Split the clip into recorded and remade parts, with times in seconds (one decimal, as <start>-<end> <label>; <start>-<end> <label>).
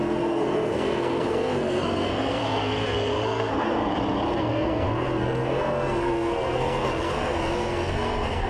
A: 0.0-3.8 remade; 3.8-4.4 recorded; 4.4-8.5 remade